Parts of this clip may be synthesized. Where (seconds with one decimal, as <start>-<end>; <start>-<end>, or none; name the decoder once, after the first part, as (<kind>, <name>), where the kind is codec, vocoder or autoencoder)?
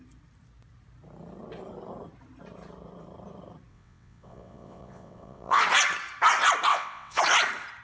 3.7-5.6 (vocoder, WaveNeXt); 6.7-7.2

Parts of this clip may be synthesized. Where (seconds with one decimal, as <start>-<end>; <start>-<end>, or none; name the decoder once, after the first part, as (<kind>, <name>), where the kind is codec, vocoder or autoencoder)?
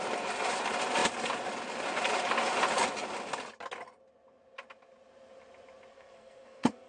5.9-6.9 (codec, SNAC)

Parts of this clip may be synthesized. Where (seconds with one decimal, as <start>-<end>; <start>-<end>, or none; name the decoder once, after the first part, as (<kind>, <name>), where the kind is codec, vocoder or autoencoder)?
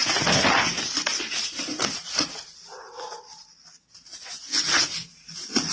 none